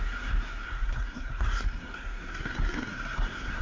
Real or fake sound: fake